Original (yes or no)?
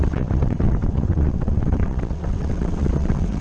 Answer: no